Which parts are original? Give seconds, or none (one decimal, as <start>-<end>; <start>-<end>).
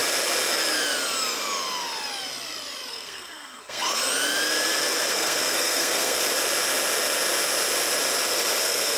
0.0-2.9; 4.1-5.1; 6.2-8.6